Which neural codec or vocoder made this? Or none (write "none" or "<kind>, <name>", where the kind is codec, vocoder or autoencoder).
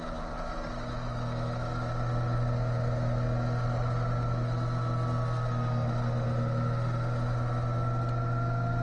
none